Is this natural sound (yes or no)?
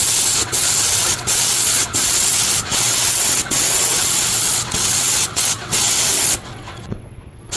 no